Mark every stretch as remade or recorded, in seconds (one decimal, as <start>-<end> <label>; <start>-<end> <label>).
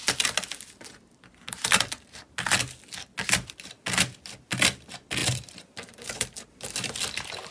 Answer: 0.0-7.5 recorded